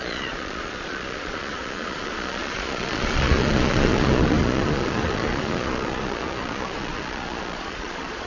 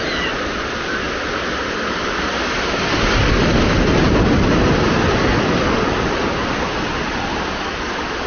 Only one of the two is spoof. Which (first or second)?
first